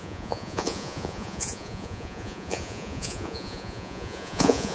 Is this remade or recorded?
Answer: remade